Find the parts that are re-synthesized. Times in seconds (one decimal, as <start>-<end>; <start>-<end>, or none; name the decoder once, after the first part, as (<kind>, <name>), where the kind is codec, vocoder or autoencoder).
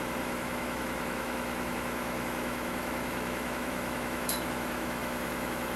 0.0-5.8 (autoencoder, DAC-VAE)